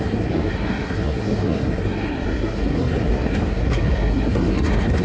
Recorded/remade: remade